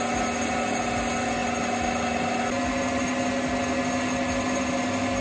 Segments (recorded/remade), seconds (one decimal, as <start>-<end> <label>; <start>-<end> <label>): 0.0-5.2 recorded

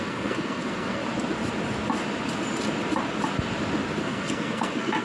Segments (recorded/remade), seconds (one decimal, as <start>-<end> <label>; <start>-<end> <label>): 0.0-1.0 remade; 1.0-4.0 recorded; 4.0-5.0 remade